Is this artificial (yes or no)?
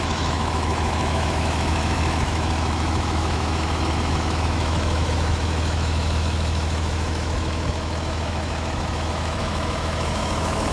yes